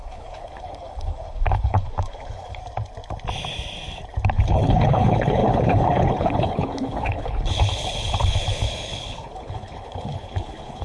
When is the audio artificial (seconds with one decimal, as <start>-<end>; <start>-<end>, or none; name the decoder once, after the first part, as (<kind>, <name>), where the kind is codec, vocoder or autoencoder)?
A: 0.0-2.6 (codec, HILCodec); 4.3-10.8